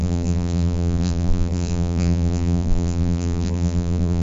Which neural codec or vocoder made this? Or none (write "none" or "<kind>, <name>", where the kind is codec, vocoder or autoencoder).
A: vocoder, BigVGAN v2